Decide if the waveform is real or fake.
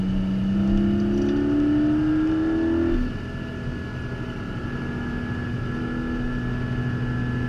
real